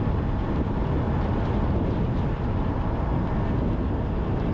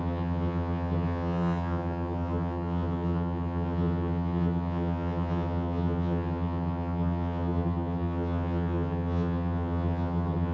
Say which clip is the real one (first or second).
first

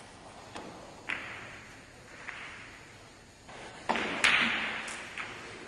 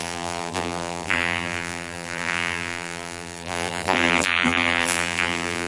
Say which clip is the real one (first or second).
first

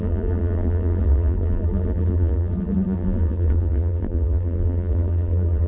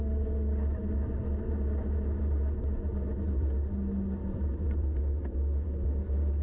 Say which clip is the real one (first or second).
second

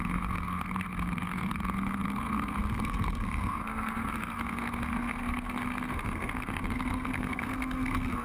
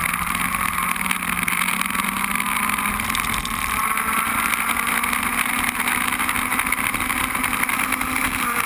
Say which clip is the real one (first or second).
second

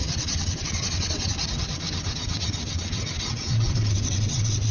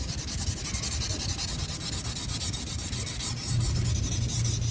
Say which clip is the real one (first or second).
second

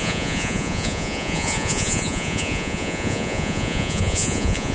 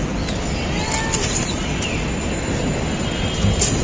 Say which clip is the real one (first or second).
second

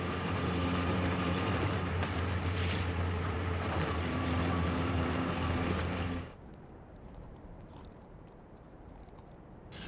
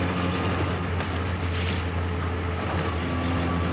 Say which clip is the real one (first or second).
second